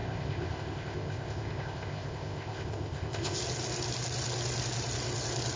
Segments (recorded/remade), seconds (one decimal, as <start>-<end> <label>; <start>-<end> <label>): 0.0-3.4 remade; 3.4-5.6 recorded